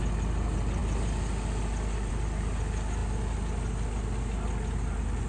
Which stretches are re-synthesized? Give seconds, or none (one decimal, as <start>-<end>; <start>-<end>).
none